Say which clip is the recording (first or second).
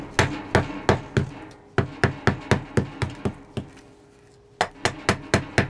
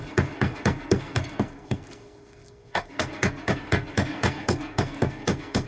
first